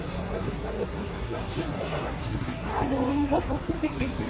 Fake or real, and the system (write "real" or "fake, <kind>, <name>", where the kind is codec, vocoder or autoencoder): fake, codec, SNAC